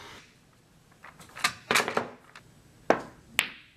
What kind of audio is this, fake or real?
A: real